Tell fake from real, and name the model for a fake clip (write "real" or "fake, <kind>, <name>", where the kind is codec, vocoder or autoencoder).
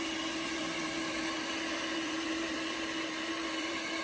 fake, vocoder, BigVGAN v2